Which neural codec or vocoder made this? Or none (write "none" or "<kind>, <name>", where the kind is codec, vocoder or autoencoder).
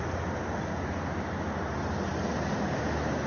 none